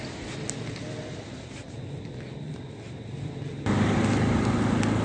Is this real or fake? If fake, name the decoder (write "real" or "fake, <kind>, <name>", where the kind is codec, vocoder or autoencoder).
real